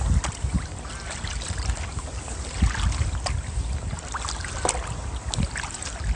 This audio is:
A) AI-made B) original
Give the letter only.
B